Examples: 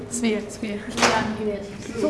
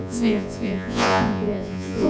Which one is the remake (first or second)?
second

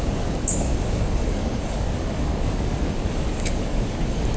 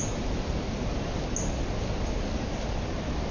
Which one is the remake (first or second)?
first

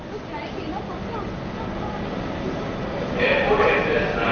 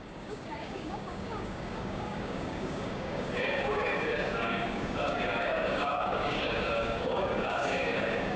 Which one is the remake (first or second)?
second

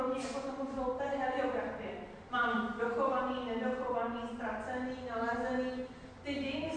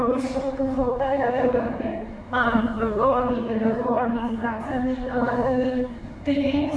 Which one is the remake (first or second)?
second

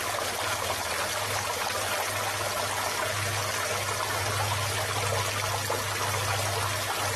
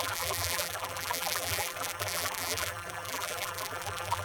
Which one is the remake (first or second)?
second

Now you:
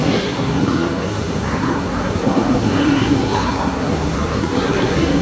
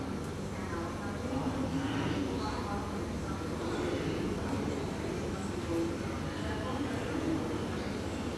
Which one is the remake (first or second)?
first